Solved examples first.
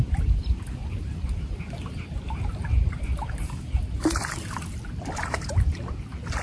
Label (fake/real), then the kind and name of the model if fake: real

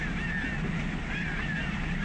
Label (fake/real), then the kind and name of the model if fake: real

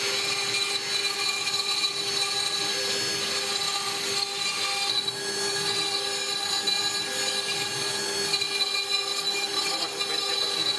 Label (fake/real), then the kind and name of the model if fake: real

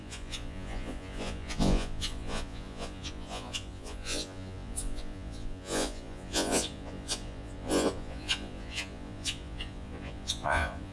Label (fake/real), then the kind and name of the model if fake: fake, vocoder, Vocos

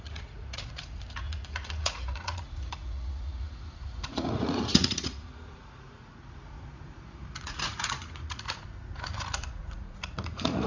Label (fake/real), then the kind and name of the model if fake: fake, vocoder, Vocos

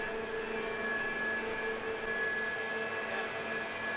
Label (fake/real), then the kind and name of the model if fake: real